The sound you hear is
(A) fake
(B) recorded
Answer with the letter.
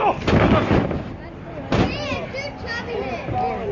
B